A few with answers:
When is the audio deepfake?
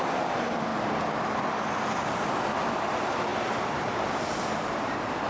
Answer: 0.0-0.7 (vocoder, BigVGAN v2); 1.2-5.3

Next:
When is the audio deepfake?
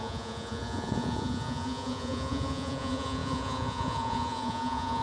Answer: 0.0-5.0 (vocoder, Vocos)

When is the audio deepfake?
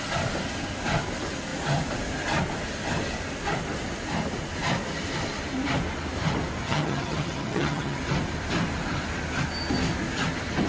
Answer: 6.6-8.0 (vocoder, HiFi-GAN)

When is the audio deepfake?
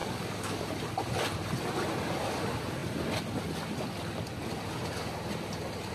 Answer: 0.0-0.6 (codec, DAC)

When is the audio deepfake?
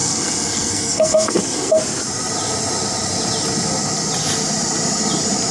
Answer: 0.0-1.8 (codec, SNAC)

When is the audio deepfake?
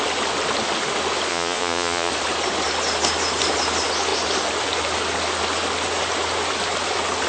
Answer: 1.3-2.1 (vocoder, Vocos)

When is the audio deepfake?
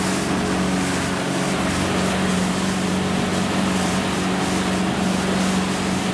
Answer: 2.3-2.9 (vocoder, BigVGAN v2); 3.3-4.1